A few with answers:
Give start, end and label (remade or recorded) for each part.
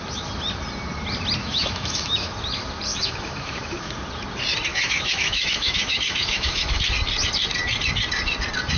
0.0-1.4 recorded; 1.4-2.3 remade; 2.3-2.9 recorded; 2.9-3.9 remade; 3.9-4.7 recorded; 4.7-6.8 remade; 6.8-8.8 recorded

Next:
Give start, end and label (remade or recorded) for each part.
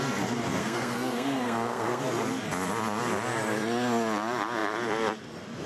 0.0-0.6 recorded; 0.6-2.0 remade; 2.0-5.7 recorded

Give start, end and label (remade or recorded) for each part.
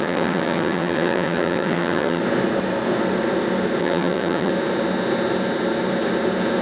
0.0-2.2 remade; 2.2-3.8 recorded; 3.8-4.5 remade; 4.5-6.6 recorded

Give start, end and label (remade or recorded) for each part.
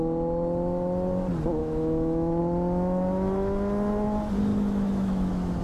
0.0-1.6 recorded; 1.6-2.4 remade; 2.4-4.5 recorded; 4.5-5.6 remade